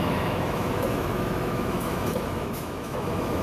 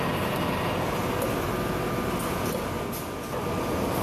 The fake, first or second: first